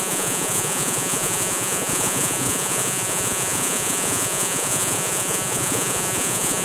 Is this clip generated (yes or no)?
yes